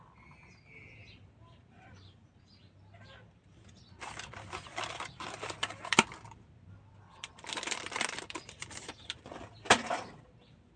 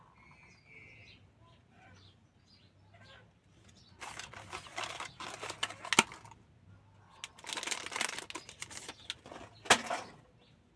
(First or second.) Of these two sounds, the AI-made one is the first